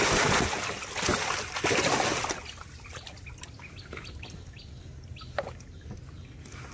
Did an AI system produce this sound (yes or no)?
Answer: no